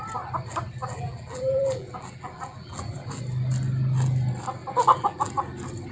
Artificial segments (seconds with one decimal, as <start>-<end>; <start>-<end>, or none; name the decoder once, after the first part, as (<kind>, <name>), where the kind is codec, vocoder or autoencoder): 0.8-3.2 (vocoder, BigVGAN v2); 4.6-5.3